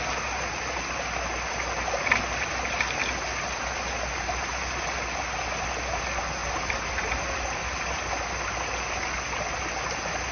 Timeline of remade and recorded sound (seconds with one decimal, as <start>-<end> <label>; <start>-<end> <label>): 0.0-6.4 recorded; 6.4-7.1 remade; 7.1-10.3 recorded